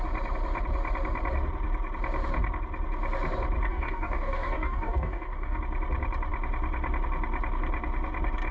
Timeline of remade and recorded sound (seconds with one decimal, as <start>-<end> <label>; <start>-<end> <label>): 0.0-3.7 recorded; 3.7-5.6 remade; 5.6-8.5 recorded